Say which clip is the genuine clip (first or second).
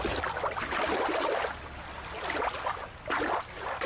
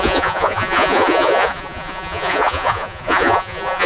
first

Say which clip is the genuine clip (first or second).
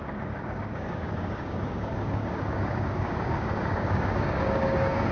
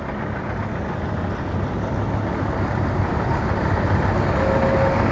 second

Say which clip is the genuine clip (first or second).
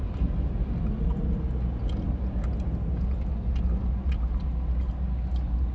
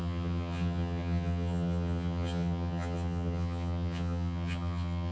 first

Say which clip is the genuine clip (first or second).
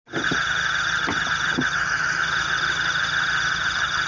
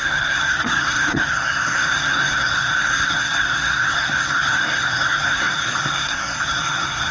first